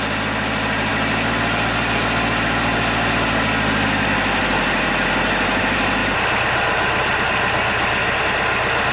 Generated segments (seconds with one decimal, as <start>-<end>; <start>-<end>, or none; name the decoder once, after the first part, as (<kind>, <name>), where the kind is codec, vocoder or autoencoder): 6.0-8.2 (vocoder, BigVGAN v2)